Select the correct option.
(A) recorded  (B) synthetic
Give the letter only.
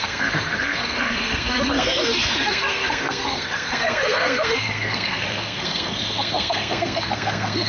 B